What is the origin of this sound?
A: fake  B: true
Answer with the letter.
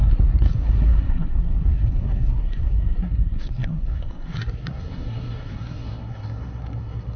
A